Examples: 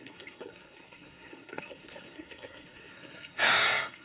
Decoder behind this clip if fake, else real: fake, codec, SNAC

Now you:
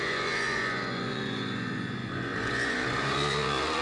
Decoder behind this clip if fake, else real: fake, vocoder, Vocos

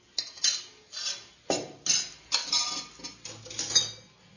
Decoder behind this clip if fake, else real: real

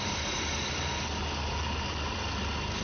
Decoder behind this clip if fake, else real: real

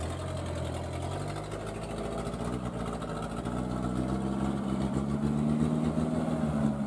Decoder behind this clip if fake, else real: real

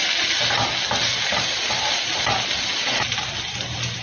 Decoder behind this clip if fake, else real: real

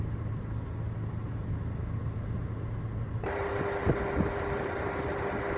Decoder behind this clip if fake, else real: real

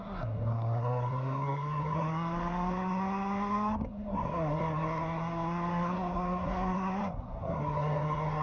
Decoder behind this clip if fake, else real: fake, codec, SNAC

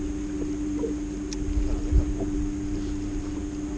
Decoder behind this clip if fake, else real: real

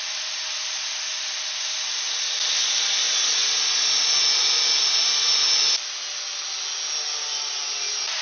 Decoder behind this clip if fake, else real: real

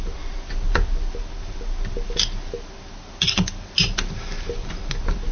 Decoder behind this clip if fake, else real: real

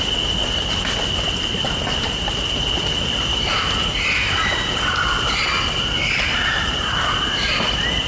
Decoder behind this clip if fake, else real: real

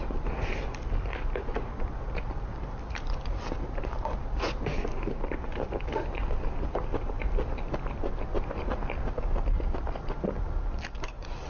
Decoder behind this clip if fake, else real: real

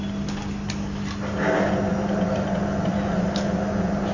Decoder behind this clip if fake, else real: real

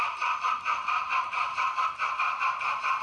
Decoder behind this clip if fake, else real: real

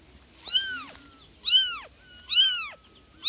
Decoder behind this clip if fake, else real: real